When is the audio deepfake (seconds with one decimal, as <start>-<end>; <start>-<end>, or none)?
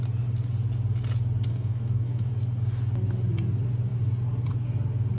1.5-2.3